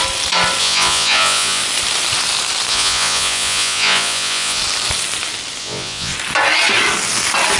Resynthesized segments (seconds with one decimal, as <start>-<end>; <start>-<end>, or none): 0.6-1.6; 2.7-4.6; 5.6-6.1